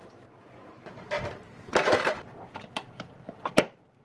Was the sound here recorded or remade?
remade